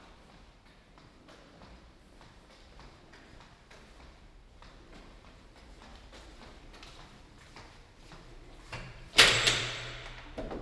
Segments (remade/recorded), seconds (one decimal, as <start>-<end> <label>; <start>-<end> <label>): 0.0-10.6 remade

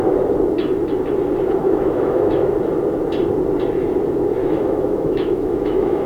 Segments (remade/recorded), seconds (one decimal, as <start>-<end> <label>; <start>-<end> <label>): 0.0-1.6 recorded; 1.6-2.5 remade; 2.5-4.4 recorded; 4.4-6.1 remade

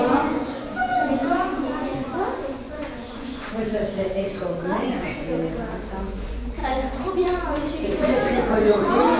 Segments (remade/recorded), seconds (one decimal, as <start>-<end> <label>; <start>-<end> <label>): 0.0-5.3 remade; 5.3-6.0 recorded; 6.0-9.2 remade

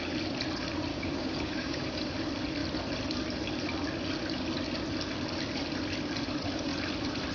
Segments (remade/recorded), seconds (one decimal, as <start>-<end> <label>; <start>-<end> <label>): 0.0-0.9 recorded; 0.9-2.0 remade; 2.0-7.3 recorded

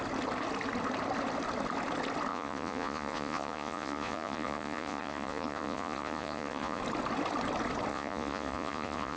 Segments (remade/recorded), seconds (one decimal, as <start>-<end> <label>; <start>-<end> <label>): 0.0-2.3 recorded; 2.3-6.8 remade; 6.8-7.9 recorded; 7.9-9.2 remade